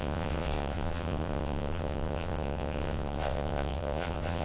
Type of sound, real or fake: fake